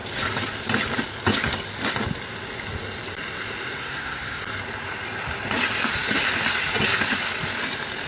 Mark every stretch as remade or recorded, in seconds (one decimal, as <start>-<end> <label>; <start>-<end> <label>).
0.0-3.8 recorded; 3.8-4.4 remade; 4.4-8.1 recorded